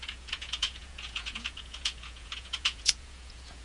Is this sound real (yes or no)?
no